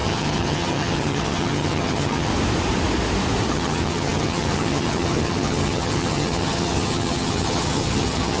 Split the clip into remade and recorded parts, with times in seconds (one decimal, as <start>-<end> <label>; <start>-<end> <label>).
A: 0.0-2.3 remade; 2.3-3.5 recorded; 3.5-8.4 remade